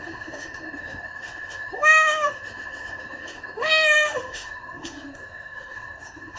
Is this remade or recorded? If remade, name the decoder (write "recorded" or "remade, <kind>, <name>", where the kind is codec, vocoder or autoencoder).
remade, autoencoder, DAC-VAE